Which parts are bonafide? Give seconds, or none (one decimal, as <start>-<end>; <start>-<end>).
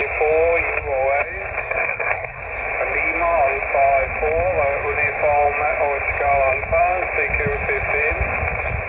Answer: 0.0-1.6; 2.4-8.9